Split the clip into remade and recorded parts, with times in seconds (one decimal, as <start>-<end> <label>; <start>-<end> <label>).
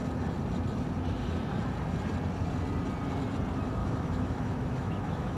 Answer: 0.0-3.8 recorded; 3.8-5.4 remade